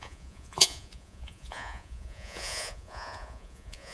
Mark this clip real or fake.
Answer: fake